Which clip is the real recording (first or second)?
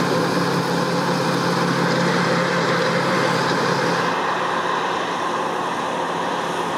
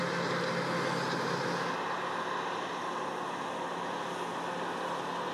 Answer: second